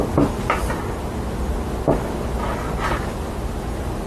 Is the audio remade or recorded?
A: recorded